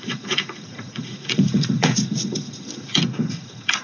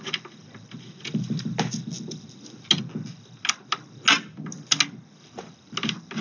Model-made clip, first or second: first